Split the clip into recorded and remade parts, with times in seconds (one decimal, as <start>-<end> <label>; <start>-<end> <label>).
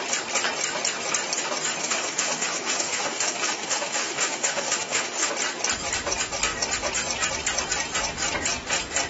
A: 0.0-1.8 recorded; 1.8-5.3 remade; 5.3-9.1 recorded